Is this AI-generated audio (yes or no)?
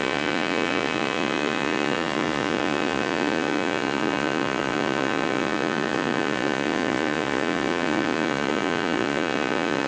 yes